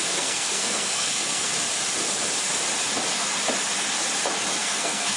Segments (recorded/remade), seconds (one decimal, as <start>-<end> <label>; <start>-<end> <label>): 0.0-1.5 remade; 1.5-4.6 recorded; 4.6-5.2 remade